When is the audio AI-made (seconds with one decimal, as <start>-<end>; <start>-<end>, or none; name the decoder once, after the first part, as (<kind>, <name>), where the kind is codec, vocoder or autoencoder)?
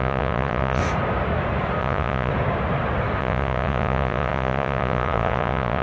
0.0-0.8 (vocoder, Vocos); 1.8-2.3; 3.2-5.8